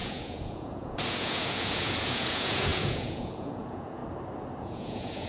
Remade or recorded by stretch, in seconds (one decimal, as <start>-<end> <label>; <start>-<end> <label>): 0.0-4.0 remade; 4.0-4.6 recorded; 4.6-5.3 remade